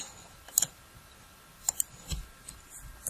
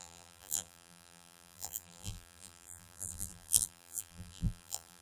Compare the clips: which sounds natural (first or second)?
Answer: first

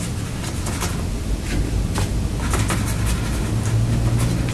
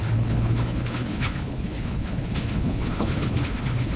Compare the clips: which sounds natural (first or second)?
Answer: first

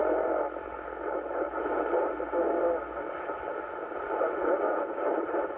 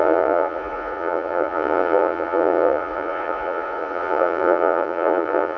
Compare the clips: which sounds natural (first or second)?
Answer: first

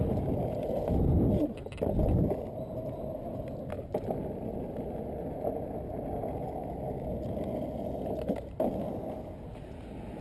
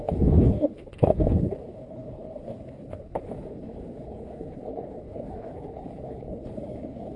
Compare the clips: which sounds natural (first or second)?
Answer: first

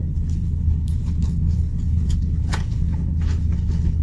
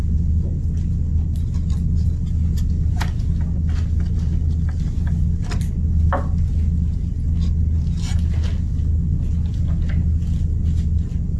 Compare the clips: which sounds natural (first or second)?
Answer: second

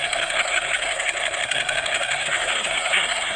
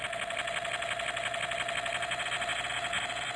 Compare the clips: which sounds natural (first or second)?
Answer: second